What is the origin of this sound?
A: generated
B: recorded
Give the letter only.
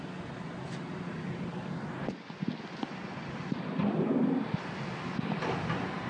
B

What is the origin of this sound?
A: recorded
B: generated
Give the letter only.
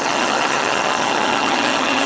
B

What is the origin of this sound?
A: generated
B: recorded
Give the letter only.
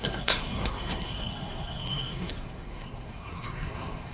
A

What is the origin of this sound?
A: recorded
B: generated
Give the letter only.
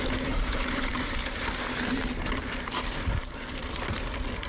B